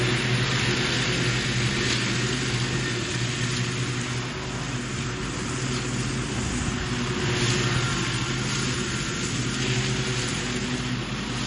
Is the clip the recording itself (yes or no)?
yes